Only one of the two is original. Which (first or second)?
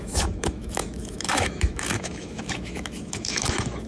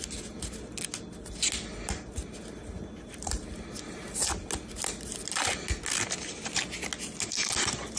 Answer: second